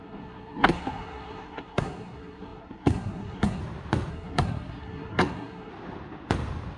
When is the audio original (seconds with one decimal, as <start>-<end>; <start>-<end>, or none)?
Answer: 3.6-4.1; 5.7-6.8